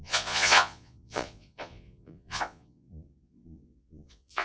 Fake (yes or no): yes